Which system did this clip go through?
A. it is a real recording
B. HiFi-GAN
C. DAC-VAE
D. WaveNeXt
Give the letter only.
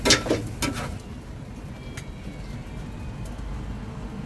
A